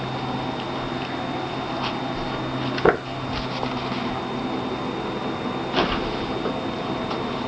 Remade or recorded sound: recorded